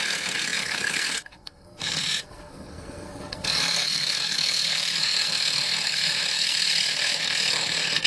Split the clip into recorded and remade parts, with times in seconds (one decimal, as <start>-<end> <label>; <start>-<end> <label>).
0.0-8.1 remade

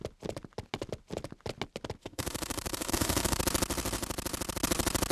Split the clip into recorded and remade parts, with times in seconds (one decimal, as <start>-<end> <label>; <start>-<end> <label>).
0.0-2.0 recorded; 2.0-3.4 remade; 3.4-5.1 recorded

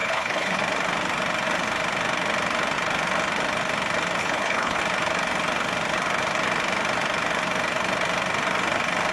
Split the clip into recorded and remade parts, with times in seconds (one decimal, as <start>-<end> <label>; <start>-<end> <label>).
0.0-0.6 remade; 0.6-4.2 recorded; 4.2-4.8 remade; 4.8-9.1 recorded

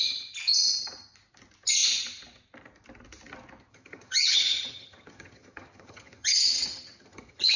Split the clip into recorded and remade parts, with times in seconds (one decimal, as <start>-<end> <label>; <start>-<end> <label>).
0.0-3.7 recorded; 3.7-7.6 remade

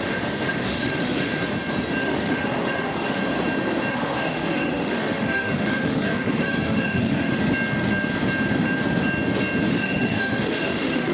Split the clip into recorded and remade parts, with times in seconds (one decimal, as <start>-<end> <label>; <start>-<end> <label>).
0.0-1.3 remade; 1.3-2.0 recorded; 2.0-3.2 remade; 3.2-3.9 recorded; 3.9-7.4 remade; 7.4-9.7 recorded; 9.7-11.1 remade

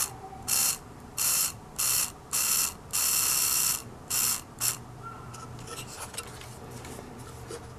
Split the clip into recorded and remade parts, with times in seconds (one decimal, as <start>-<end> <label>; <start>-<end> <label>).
0.0-0.6 recorded; 0.6-1.6 remade; 1.6-7.8 recorded

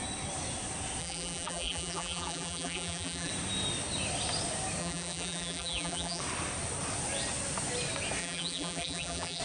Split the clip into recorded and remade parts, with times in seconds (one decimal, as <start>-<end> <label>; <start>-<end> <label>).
0.0-1.0 recorded; 1.0-3.3 remade; 3.3-4.8 recorded; 4.8-6.2 remade; 6.2-8.2 recorded; 8.2-9.4 remade

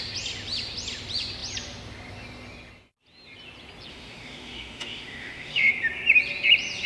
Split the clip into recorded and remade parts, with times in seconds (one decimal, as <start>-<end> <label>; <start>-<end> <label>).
0.0-3.9 recorded; 3.9-5.7 remade; 5.7-6.9 recorded